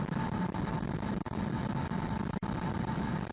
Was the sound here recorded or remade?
recorded